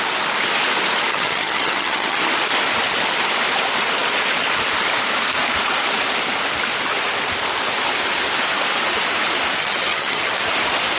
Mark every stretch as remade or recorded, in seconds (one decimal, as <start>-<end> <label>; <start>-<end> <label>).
0.0-1.1 recorded; 1.1-2.2 remade; 2.2-9.6 recorded; 9.6-10.3 remade; 10.3-11.0 recorded